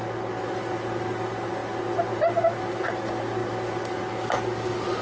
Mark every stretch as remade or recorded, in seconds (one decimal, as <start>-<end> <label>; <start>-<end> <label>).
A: 0.0-5.0 recorded